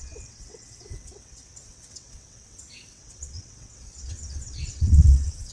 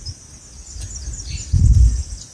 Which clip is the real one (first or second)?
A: second